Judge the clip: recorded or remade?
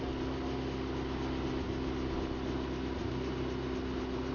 recorded